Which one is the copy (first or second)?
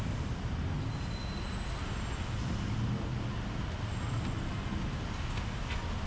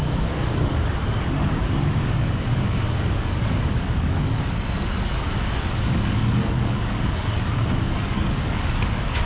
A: second